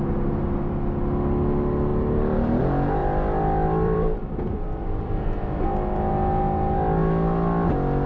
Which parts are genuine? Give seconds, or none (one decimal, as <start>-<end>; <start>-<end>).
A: 0.0-1.9; 2.6-3.0; 5.6-8.1